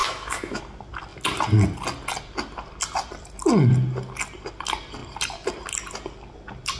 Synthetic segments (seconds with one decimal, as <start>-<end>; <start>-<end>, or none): 0.0-0.6